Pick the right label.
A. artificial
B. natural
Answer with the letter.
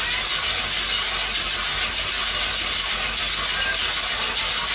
B